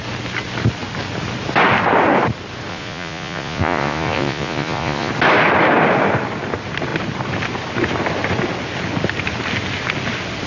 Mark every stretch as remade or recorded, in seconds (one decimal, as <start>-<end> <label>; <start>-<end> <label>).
0.0-2.7 recorded; 2.7-5.1 remade; 5.1-10.5 recorded